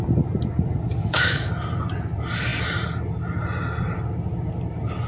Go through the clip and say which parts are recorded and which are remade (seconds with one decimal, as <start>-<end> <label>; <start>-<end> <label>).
0.0-1.0 recorded; 1.0-1.5 remade; 1.5-5.1 recorded